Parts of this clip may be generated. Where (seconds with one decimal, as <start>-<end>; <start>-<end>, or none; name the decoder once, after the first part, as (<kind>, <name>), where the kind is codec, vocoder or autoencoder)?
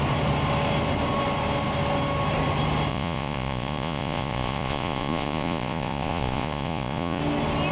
2.9-7.2 (vocoder, Vocos)